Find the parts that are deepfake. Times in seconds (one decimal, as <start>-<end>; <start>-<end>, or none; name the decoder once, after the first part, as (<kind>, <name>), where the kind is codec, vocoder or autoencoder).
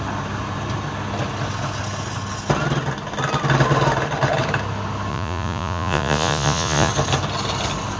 5.1-6.9 (vocoder, Vocos)